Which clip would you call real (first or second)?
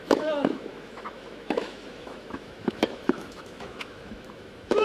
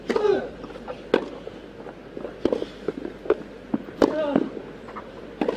second